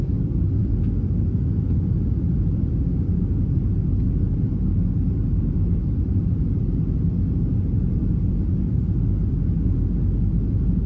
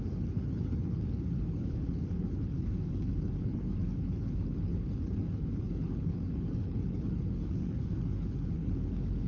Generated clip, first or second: second